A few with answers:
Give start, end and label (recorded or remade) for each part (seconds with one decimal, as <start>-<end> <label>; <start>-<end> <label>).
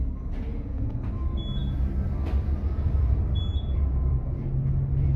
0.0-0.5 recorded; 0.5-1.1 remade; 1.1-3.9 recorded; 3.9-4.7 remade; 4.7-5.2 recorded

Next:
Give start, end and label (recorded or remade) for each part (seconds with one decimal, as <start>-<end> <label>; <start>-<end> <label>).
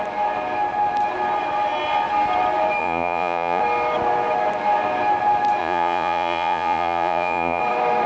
0.0-2.8 recorded; 2.8-3.6 remade; 3.6-5.6 recorded; 5.6-7.6 remade; 7.6-8.1 recorded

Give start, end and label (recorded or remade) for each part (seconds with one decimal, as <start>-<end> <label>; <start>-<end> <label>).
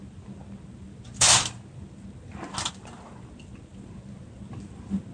0.0-5.1 recorded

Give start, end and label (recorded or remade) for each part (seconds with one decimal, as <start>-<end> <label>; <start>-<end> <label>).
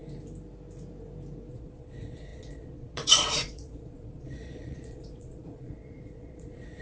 0.0-1.5 recorded; 1.5-6.8 remade